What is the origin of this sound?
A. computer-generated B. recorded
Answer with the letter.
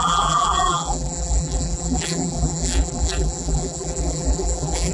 A